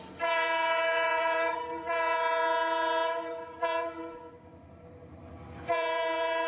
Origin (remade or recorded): remade